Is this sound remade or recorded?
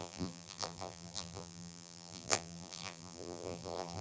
remade